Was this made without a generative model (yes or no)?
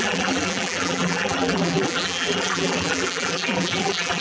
no